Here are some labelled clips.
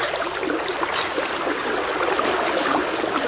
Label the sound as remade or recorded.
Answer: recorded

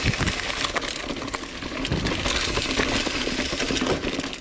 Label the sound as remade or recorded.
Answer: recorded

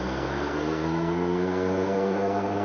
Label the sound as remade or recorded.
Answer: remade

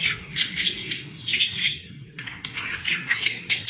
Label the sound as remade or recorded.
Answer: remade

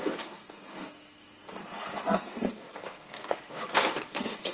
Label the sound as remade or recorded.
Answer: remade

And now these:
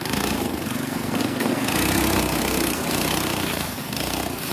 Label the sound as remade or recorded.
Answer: remade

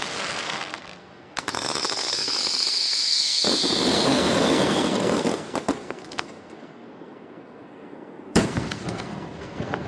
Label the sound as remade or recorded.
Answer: remade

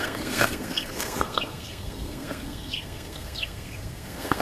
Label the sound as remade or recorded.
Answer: remade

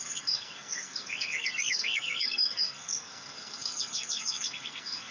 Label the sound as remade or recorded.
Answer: remade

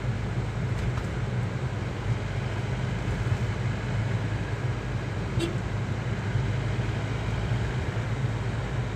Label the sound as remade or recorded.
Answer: recorded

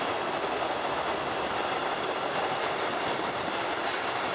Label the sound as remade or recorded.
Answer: recorded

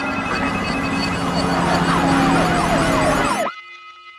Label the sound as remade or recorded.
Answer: recorded